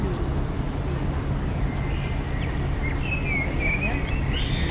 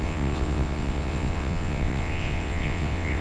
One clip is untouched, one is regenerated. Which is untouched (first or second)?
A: first